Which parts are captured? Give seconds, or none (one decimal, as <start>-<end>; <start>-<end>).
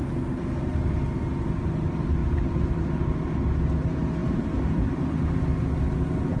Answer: 0.0-2.2; 3.2-4.2; 5.3-6.4